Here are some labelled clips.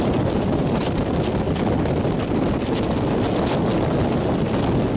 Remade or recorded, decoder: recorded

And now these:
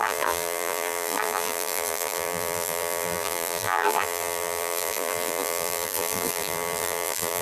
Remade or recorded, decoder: remade, vocoder, BigVGAN v2